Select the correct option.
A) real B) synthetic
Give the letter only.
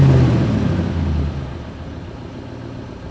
A